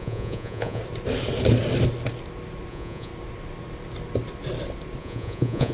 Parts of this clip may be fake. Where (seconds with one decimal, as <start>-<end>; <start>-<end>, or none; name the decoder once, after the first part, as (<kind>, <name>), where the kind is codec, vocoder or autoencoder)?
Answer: 0.0-0.8 (vocoder, Vocos); 2.7-3.1; 5.0-5.7